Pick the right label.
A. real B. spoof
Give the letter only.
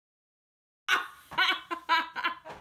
A